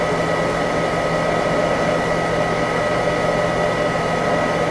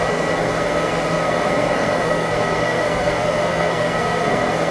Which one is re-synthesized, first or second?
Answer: second